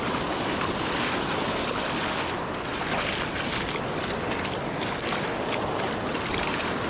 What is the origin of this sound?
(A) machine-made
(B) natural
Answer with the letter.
B